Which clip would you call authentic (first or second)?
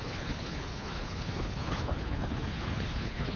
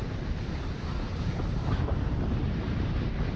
second